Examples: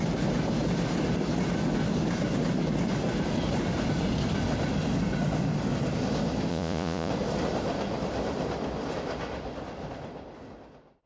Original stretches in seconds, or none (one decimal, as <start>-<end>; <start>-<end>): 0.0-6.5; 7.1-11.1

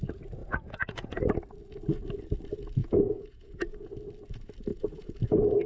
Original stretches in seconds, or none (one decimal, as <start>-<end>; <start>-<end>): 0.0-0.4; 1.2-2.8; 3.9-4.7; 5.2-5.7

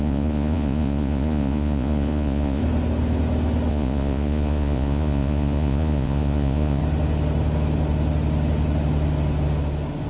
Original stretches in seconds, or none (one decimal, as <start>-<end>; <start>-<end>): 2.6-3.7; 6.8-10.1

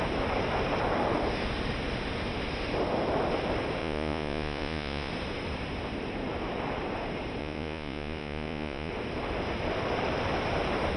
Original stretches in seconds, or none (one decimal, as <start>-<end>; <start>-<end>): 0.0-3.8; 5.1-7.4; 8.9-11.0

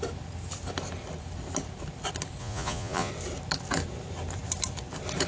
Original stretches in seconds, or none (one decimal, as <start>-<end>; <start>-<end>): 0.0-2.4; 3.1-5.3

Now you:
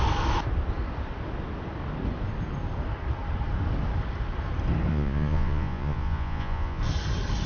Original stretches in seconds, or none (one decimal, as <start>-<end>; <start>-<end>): 0.0-4.9; 6.8-7.5

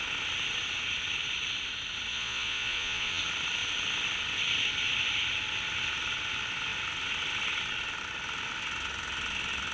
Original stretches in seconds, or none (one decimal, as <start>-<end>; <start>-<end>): 0.0-2.1; 3.2-9.7

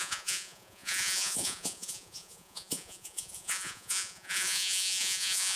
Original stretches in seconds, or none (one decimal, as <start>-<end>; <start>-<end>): none